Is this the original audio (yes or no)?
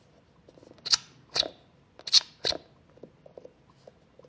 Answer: yes